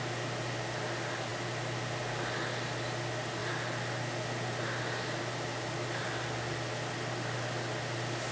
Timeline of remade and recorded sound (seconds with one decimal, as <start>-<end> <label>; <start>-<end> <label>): 0.0-3.4 recorded; 3.4-6.9 remade; 6.9-8.3 recorded